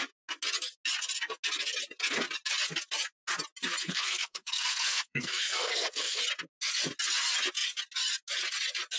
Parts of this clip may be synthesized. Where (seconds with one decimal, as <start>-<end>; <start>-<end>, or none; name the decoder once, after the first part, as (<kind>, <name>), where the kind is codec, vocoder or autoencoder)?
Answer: 3.8-6.2 (codec, SNAC)

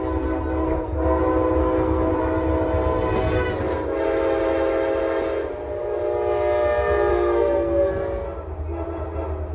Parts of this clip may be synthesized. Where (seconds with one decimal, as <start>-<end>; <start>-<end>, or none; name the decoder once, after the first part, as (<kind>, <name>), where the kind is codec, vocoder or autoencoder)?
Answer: 0.6-1.2 (codec, SNAC); 1.6-2.1; 7.1-7.9

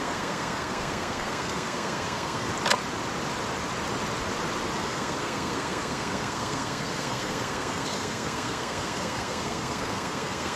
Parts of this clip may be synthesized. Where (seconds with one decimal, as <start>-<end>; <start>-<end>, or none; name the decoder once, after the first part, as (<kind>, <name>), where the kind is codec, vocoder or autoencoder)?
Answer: 0.0-2.5 (codec, SNAC); 4.8-10.6

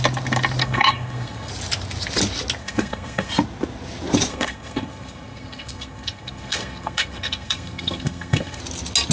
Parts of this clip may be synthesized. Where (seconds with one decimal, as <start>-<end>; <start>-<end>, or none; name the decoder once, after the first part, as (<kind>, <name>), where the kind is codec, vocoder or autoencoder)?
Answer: 0.6-1.5 (codec, SNAC); 2.6-3.3; 4.3-8.6

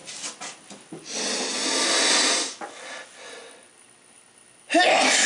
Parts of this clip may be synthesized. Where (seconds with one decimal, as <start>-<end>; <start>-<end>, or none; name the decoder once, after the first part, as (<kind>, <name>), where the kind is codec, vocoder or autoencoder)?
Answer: none

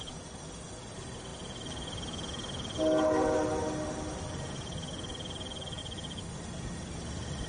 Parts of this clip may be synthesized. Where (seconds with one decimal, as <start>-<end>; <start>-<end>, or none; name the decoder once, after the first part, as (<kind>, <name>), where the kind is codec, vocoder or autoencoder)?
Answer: none

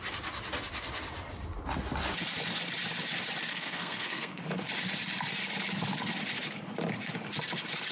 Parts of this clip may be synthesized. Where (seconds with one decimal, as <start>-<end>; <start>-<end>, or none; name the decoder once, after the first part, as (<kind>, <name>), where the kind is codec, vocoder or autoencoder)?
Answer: 3.5-4.4 (codec, SNAC)